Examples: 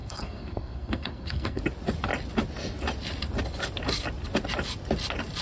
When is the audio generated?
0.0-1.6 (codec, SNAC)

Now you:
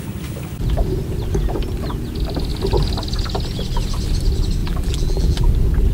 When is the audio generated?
4.6-5.5 (vocoder, BigVGAN v2)

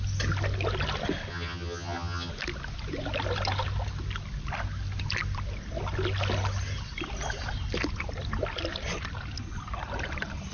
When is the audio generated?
1.3-2.3 (vocoder, HiFi-GAN)

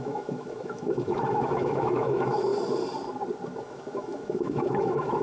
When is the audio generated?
0.0-2.5 (autoencoder, DAC-VAE); 3.6-5.2

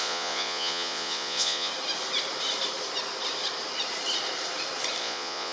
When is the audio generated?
0.0-1.7 (vocoder, Vocos); 5.0-5.5